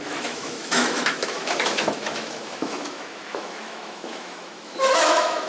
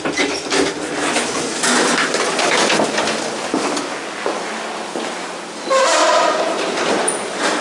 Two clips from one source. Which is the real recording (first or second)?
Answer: second